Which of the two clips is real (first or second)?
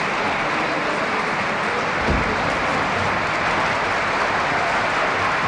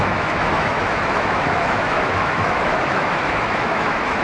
first